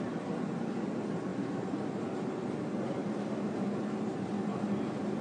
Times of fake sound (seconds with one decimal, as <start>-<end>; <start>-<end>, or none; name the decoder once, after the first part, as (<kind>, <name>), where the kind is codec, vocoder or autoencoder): none